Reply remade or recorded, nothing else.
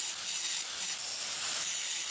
recorded